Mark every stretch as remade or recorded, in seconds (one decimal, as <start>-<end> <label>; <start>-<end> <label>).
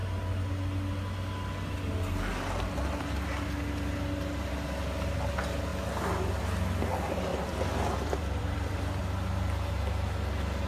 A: 0.0-7.3 recorded; 7.3-9.0 remade; 9.0-10.7 recorded